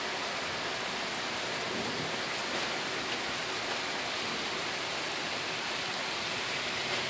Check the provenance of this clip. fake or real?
real